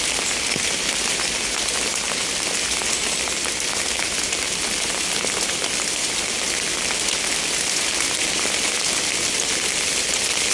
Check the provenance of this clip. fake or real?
real